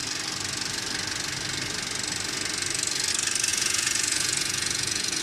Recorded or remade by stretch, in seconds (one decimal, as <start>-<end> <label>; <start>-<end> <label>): 0.0-3.5 recorded; 3.5-5.2 remade